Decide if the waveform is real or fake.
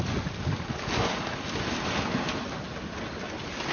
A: real